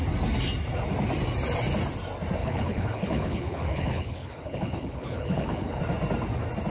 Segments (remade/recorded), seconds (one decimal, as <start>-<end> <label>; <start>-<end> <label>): 0.0-2.4 recorded; 2.4-5.8 remade; 5.8-6.7 recorded